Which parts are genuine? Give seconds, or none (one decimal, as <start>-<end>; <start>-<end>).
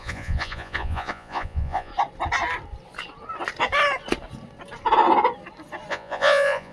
1.9-5.9